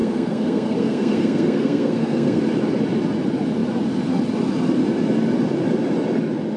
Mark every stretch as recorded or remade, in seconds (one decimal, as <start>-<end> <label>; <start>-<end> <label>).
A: 0.0-2.4 remade; 2.4-6.6 recorded